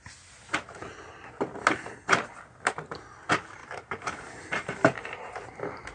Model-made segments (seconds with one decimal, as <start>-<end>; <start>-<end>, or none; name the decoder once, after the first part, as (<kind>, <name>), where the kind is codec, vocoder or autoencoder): 3.6-5.4 (vocoder, BigVGAN v2)